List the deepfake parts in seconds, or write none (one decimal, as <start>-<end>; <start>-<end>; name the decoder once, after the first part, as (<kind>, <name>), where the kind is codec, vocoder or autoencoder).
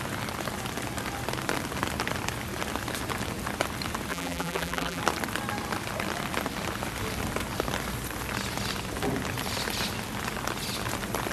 4.1-5.0 (vocoder, BigVGAN v2)